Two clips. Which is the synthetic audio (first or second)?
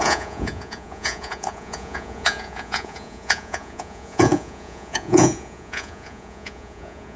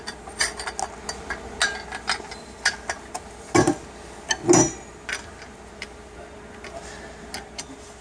first